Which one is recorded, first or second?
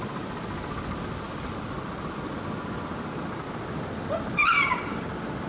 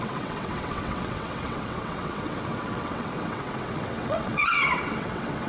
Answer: first